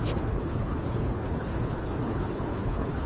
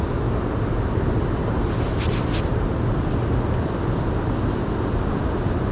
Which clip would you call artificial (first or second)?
first